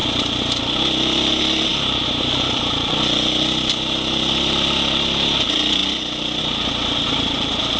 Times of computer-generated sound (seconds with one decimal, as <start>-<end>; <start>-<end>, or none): 1.7-2.9